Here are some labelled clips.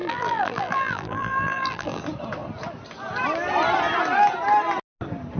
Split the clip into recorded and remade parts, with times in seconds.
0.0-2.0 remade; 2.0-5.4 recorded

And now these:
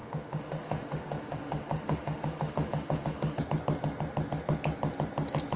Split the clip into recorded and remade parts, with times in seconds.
0.0-3.4 remade; 3.4-5.6 recorded

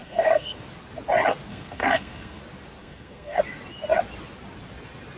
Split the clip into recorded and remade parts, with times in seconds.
0.0-0.6 remade; 0.6-1.5 recorded; 1.5-2.4 remade; 2.4-2.8 recorded; 2.8-3.4 remade; 3.4-5.2 recorded

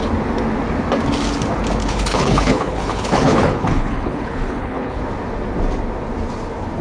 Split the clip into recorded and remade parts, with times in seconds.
0.0-1.8 recorded; 1.8-5.0 remade; 5.0-6.8 recorded